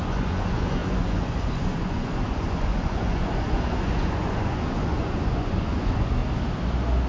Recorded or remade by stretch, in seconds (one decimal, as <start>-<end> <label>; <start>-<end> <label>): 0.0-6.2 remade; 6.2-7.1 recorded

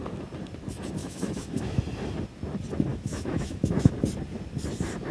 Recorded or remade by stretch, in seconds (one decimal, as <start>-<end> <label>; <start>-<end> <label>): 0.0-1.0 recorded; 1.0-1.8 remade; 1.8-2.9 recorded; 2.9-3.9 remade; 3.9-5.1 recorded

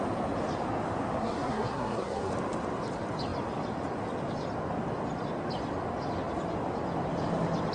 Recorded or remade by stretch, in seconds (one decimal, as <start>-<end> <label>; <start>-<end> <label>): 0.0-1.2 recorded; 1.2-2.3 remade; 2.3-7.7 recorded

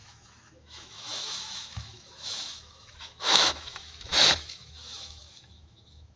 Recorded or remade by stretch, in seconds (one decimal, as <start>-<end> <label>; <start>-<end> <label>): 0.0-6.2 remade

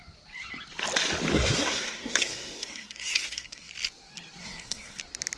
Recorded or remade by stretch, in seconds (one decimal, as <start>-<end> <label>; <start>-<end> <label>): 0.0-1.3 recorded; 1.3-3.7 remade; 3.7-4.4 recorded; 4.4-5.0 remade; 5.0-5.4 recorded